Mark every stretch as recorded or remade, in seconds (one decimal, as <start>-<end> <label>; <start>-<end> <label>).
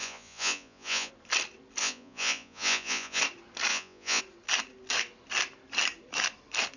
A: 0.0-1.1 remade; 1.1-1.8 recorded; 1.8-3.2 remade; 3.2-3.7 recorded; 3.7-4.2 remade; 4.2-6.8 recorded